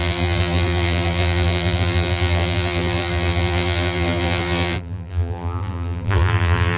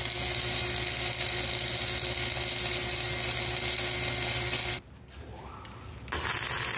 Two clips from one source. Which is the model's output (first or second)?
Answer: first